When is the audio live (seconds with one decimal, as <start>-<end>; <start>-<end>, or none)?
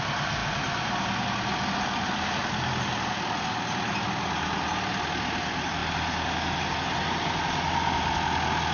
0.0-8.7